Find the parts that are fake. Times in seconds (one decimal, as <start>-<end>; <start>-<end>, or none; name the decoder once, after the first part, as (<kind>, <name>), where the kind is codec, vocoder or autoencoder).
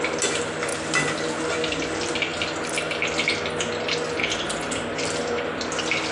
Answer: none